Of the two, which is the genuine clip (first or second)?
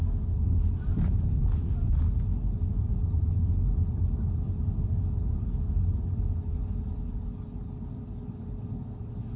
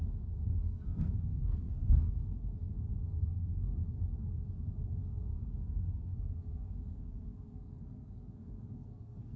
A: first